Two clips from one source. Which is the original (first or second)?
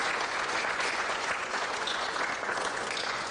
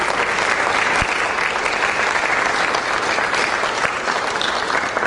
second